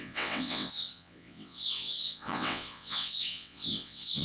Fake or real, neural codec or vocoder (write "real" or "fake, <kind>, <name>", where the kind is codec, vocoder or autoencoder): fake, vocoder, WaveNeXt